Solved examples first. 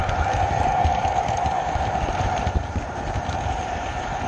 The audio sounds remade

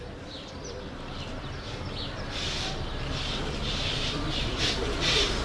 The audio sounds remade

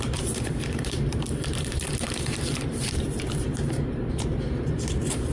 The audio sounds remade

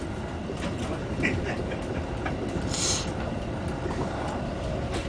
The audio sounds remade